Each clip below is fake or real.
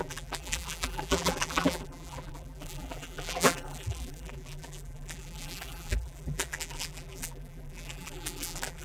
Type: fake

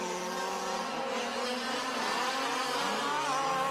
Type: real